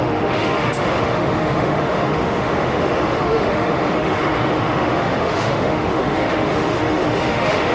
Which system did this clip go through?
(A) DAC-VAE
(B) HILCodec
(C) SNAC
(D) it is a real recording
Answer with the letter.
A